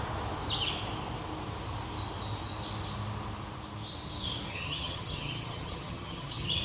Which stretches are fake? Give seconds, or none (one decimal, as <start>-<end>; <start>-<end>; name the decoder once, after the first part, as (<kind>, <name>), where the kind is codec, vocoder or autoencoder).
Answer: 4.5-6.6 (vocoder, HiFi-GAN)